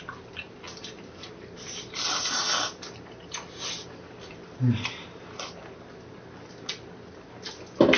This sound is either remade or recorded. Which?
recorded